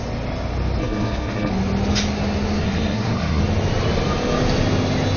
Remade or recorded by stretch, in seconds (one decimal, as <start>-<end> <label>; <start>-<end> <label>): 0.0-0.8 recorded; 0.8-1.5 remade; 1.5-2.6 recorded; 2.6-3.4 remade; 3.4-5.2 recorded